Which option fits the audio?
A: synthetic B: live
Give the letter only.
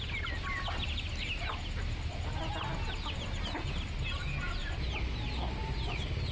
B